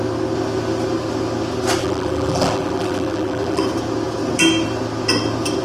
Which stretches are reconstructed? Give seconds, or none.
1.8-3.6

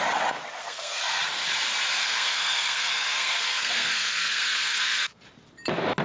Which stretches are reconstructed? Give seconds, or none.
0.6-1.2; 2.0-5.2

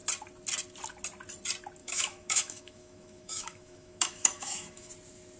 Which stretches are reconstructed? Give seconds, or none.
1.8-4.9

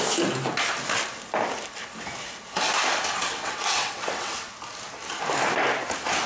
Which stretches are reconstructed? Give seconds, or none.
3.2-4.5